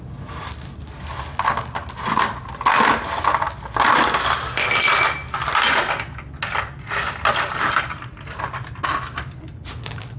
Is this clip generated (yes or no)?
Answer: no